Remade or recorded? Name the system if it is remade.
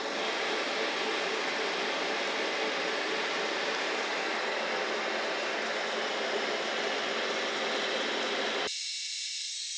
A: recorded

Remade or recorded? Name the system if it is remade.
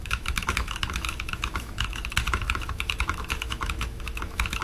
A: remade, autoencoder, DAC-VAE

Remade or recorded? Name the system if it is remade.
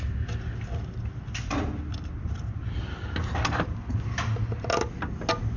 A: recorded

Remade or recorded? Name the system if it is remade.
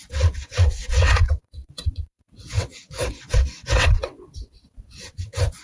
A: remade, vocoder, WaveNeXt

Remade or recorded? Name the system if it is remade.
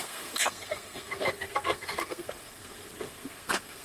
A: remade, codec, SNAC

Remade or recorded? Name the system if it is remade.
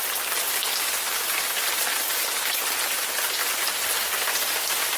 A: recorded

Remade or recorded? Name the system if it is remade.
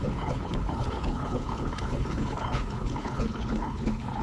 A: remade, codec, HILCodec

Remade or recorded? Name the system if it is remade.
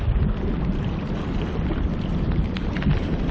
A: recorded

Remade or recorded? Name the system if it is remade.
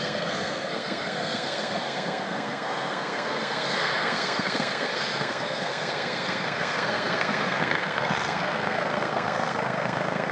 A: remade, codec, SNAC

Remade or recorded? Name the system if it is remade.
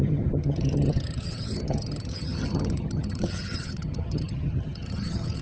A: remade, vocoder, HiFi-GAN